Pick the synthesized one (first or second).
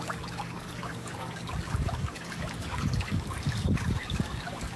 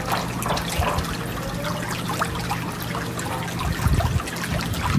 first